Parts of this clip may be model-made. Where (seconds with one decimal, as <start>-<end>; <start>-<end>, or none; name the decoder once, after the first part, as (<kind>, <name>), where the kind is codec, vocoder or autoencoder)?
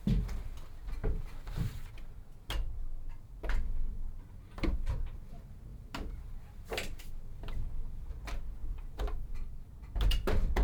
1.0-1.9 (vocoder, BigVGAN v2); 8.6-9.3